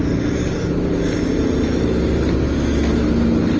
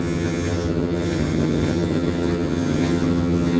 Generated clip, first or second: second